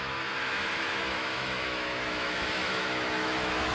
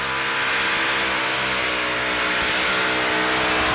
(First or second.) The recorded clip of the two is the second